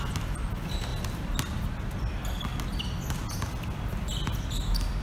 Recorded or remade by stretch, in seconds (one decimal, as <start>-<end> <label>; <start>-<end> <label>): 0.0-5.0 recorded